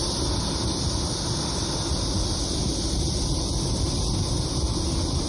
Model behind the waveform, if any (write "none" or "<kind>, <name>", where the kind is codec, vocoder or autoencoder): none